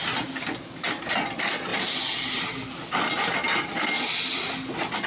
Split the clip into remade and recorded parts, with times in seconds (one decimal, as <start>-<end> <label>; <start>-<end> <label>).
0.0-5.1 recorded

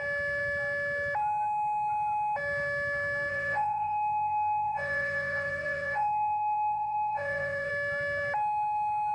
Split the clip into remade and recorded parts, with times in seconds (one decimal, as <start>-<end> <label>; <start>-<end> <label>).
0.0-3.3 recorded; 3.3-7.7 remade; 7.7-9.1 recorded

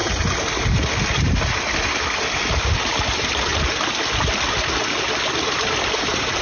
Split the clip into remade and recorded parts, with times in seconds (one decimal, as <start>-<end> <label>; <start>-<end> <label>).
0.0-6.4 recorded

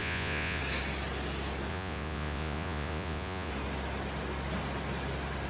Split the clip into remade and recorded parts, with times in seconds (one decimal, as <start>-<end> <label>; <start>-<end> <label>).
0.0-0.6 remade; 0.6-1.7 recorded; 1.7-3.5 remade; 3.5-5.5 recorded

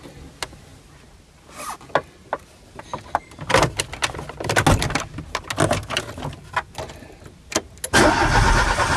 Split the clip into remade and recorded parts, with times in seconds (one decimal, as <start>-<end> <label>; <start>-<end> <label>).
0.0-9.0 recorded

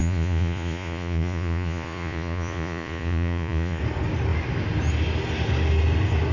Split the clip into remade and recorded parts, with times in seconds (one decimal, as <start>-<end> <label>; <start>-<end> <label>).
0.0-3.8 remade; 3.8-6.3 recorded